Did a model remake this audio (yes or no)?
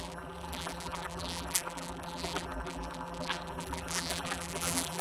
yes